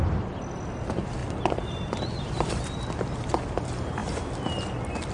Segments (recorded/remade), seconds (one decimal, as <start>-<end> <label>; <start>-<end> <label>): 0.0-1.2 recorded; 1.2-2.9 remade; 2.9-4.0 recorded; 4.0-4.5 remade; 4.5-5.1 recorded